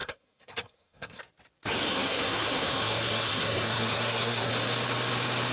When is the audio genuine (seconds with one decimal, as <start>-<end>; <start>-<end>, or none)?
1.2-1.9; 4.5-5.5